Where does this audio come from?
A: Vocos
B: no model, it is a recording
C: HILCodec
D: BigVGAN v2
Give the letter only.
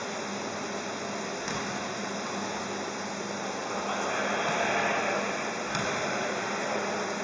B